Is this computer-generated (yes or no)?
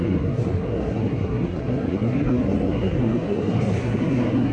yes